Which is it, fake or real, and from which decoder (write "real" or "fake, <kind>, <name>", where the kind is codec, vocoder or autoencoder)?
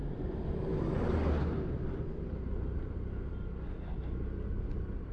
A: real